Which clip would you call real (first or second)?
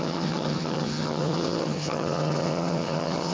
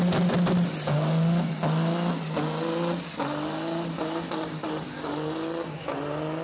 second